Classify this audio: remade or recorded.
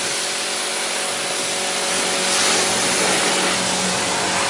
recorded